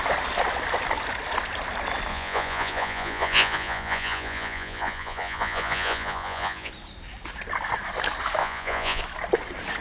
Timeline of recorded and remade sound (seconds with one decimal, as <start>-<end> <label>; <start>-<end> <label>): 0.0-2.1 recorded; 2.1-6.7 remade; 6.7-8.4 recorded; 8.4-9.0 remade; 9.0-9.8 recorded